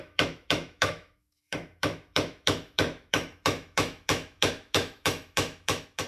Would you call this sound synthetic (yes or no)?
yes